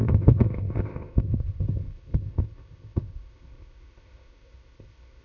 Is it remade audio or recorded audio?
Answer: remade